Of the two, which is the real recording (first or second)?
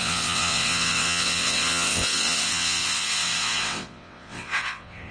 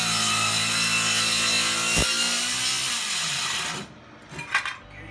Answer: second